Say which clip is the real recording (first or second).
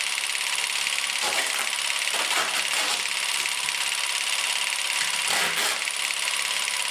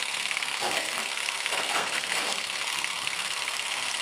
first